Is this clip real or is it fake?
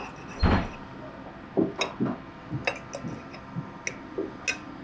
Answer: real